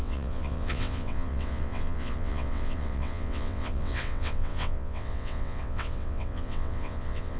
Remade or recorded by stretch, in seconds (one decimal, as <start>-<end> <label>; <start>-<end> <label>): 0.0-7.4 remade